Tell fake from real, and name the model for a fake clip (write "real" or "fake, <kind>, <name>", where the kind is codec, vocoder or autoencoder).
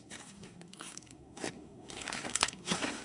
fake, codec, SNAC